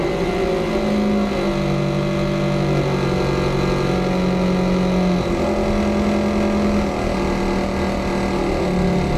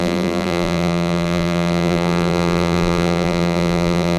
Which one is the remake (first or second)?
second